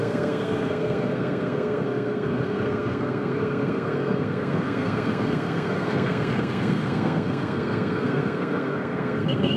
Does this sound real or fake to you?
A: fake